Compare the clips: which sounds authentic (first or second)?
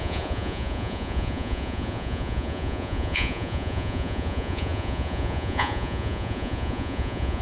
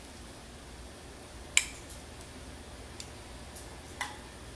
second